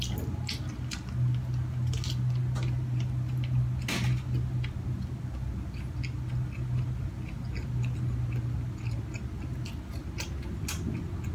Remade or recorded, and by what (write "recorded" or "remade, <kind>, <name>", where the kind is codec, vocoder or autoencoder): recorded